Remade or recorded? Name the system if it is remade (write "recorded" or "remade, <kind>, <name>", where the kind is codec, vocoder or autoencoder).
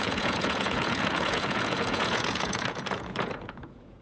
remade, vocoder, Vocos